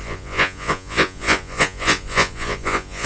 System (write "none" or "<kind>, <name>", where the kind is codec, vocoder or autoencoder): vocoder, Vocos